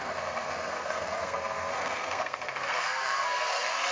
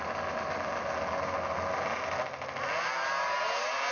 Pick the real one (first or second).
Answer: second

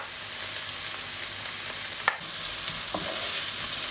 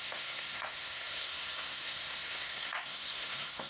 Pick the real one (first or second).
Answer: first